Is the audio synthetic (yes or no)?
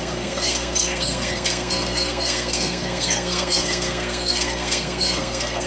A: yes